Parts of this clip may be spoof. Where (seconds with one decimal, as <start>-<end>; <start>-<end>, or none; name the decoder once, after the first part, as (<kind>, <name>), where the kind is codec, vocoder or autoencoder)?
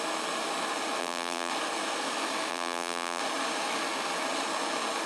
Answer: 1.0-1.5 (vocoder, BigVGAN v2); 2.5-3.2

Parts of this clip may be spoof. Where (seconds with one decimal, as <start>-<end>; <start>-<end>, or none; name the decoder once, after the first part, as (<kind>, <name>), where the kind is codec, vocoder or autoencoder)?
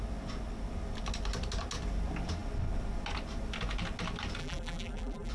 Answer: 4.4-5.3 (vocoder, BigVGAN v2)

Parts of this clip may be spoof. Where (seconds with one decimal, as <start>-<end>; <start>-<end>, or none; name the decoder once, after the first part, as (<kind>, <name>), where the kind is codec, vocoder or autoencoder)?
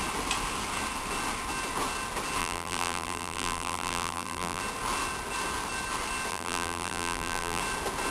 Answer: 2.4-4.6 (vocoder, BigVGAN v2); 6.3-7.6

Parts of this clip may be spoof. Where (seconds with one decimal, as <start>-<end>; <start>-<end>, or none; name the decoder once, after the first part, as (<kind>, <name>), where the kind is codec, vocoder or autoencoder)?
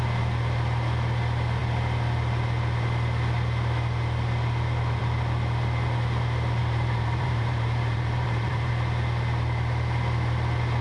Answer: 6.6-8.7 (vocoder, BigVGAN v2)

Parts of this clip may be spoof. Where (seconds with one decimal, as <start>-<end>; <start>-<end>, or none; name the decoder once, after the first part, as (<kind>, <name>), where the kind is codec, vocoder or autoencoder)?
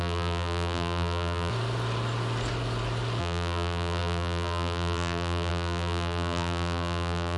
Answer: 0.0-1.5 (vocoder, BigVGAN v2); 3.2-7.4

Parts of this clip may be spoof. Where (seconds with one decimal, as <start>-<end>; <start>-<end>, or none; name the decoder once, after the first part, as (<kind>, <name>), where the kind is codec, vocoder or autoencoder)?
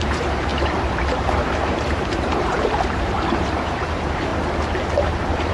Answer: 0.0-4.3 (vocoder, BigVGAN v2)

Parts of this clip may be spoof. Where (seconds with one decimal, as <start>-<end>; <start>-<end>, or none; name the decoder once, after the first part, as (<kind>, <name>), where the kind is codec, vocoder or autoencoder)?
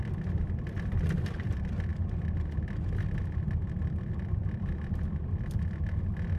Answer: 0.0-1.9 (vocoder, BigVGAN v2); 3.7-6.4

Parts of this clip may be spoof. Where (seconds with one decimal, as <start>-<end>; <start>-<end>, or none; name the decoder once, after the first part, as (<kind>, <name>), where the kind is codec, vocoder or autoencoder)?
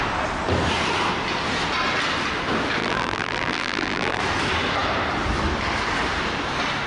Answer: 2.8-4.2 (vocoder, BigVGAN v2)